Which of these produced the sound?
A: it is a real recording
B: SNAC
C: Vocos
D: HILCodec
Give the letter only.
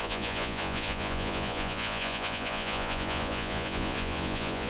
C